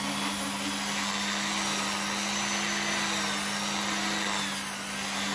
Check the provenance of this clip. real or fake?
real